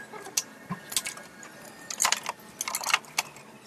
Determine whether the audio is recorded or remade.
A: recorded